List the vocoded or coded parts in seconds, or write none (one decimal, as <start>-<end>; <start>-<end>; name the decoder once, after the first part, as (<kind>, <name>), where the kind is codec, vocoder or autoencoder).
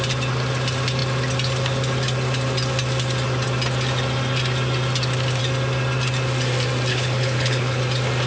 6.9-7.8 (codec, HILCodec)